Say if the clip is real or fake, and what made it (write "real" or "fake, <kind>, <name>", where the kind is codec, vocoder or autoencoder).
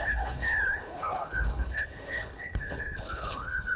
fake, codec, HILCodec